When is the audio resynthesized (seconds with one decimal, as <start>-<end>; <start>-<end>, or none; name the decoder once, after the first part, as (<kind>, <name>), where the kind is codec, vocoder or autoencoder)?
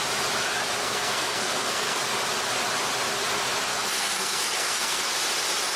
0.8-2.0 (codec, SNAC); 3.7-5.1